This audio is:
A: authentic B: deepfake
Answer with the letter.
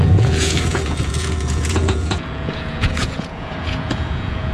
B